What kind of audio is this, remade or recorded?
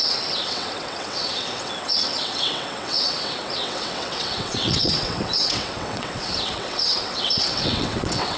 remade